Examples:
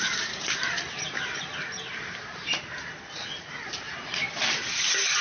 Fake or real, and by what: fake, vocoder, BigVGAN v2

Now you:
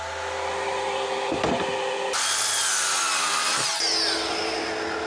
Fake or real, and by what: real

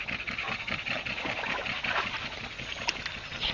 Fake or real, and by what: real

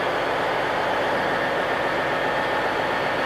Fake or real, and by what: real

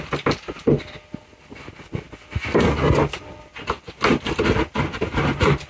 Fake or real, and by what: real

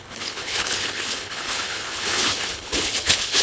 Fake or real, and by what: fake, codec, HILCodec